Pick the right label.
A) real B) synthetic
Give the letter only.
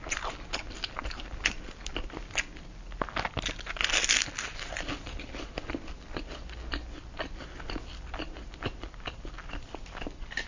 A